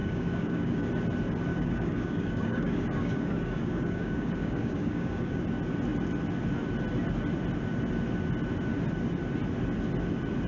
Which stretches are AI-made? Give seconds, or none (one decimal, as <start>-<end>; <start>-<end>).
0.0-0.9; 1.5-5.4